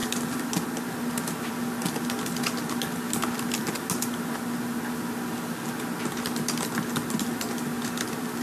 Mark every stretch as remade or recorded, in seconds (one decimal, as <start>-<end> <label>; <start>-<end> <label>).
0.0-8.4 recorded